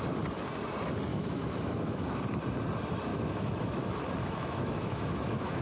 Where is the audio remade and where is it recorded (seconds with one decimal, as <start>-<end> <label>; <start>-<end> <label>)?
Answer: 0.0-1.1 recorded; 1.1-2.2 remade; 2.2-3.1 recorded; 3.1-3.8 remade; 3.8-4.2 recorded; 4.2-5.6 remade